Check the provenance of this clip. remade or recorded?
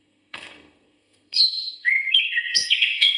remade